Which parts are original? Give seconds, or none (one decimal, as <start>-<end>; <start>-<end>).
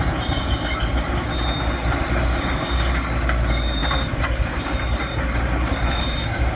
1.3-2.1